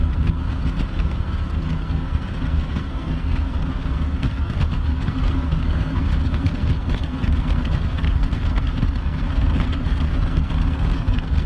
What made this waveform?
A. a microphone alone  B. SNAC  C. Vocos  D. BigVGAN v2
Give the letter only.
B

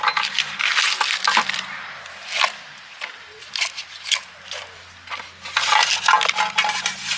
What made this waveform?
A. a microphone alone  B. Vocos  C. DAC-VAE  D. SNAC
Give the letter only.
A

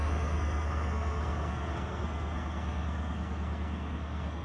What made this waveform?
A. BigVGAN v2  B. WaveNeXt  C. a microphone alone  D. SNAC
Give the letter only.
D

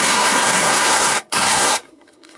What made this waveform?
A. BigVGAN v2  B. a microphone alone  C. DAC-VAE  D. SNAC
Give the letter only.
D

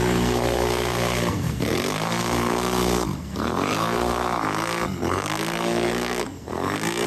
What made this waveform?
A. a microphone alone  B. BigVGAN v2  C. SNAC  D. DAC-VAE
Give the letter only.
C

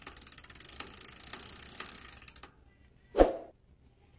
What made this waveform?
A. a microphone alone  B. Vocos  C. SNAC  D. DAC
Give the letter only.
A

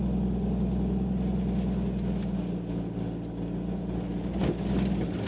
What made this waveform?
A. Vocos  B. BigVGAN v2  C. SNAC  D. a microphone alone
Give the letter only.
D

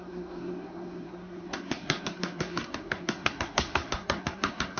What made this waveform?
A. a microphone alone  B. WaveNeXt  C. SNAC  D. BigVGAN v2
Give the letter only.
C